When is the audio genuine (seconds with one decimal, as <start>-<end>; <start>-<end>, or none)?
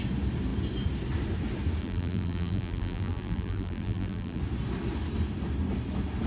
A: 0.0-1.8; 4.4-6.3